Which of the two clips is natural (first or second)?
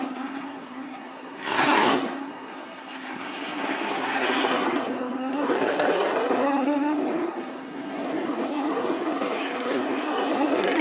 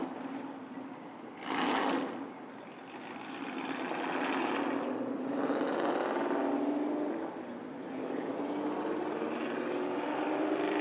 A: second